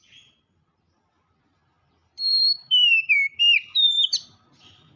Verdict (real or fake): fake